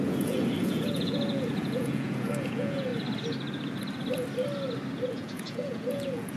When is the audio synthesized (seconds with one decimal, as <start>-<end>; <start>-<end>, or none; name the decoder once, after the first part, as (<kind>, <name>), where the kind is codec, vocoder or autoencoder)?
0.0-2.9 (vocoder, Vocos); 5.1-6.4